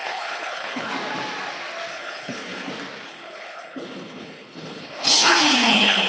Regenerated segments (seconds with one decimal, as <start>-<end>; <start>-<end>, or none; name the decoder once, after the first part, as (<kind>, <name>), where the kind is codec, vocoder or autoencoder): 0.0-0.9 (codec, HILCodec); 1.9-2.7; 3.1-6.1